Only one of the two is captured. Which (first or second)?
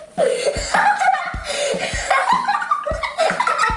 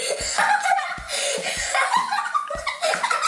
first